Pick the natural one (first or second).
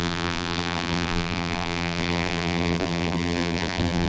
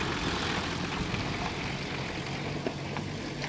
second